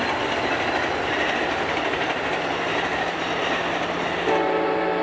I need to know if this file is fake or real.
real